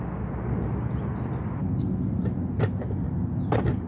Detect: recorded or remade recorded